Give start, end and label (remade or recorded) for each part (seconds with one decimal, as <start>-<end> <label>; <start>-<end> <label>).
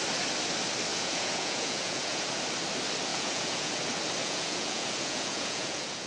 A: 0.0-0.9 recorded; 0.9-2.3 remade; 2.3-3.1 recorded; 3.1-3.7 remade; 3.7-4.2 recorded; 4.2-6.1 remade